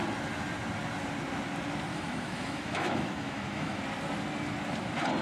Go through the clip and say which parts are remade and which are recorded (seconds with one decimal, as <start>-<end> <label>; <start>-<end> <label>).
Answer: 0.0-1.9 recorded; 1.9-3.8 remade; 3.8-5.2 recorded